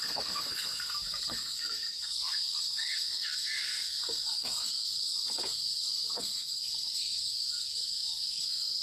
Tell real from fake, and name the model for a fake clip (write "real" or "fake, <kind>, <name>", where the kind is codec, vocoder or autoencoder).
fake, codec, SNAC